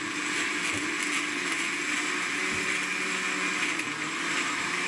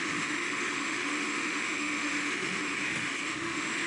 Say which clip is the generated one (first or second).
second